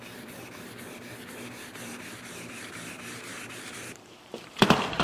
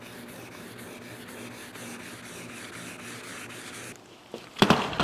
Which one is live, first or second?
second